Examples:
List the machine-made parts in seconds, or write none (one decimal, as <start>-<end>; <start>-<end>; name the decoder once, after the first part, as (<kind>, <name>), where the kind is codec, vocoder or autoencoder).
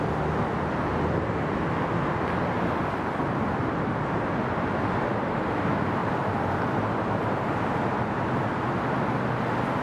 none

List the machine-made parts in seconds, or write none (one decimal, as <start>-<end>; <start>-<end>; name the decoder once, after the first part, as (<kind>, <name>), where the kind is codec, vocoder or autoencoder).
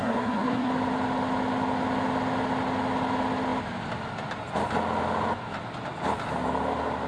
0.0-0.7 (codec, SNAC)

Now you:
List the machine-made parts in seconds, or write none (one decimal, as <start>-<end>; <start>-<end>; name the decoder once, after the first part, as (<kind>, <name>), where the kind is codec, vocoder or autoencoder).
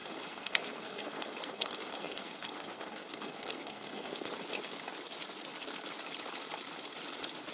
0.0-4.3 (codec, SNAC)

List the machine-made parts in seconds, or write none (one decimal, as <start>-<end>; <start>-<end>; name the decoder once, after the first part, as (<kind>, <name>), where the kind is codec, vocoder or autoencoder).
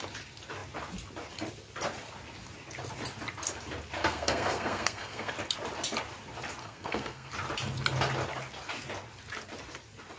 4.0-5.3 (codec, SNAC); 6.6-7.3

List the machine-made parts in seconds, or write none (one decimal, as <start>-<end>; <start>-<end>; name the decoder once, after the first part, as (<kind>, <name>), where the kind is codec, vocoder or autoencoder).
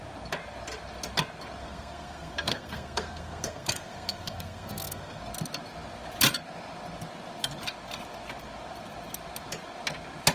1.6-5.2 (codec, SNAC)